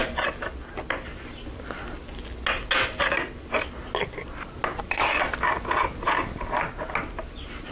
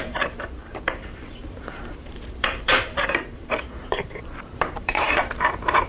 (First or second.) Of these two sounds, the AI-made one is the second